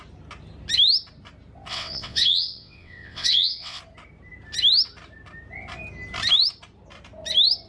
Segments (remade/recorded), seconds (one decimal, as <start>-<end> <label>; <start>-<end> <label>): 0.0-1.7 recorded; 1.7-3.8 remade; 3.8-7.7 recorded